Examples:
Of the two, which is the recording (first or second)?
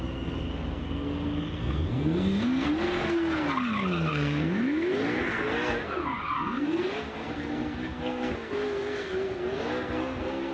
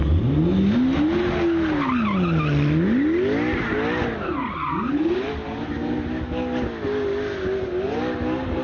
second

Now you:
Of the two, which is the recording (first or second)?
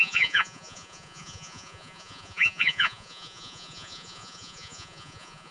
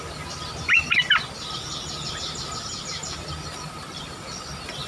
second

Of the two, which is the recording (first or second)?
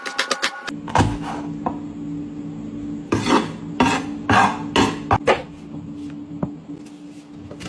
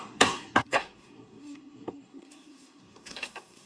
first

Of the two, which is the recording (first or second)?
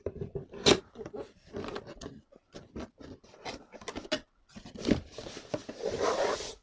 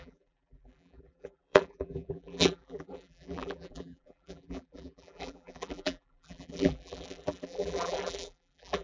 first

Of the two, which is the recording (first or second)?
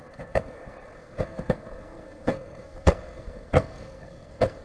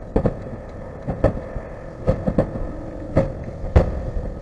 second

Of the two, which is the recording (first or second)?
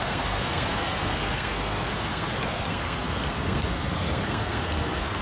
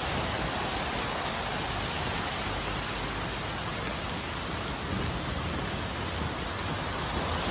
second